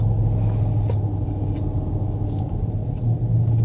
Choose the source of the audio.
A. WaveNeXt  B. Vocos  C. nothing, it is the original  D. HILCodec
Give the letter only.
C